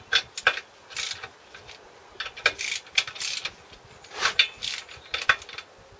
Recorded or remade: recorded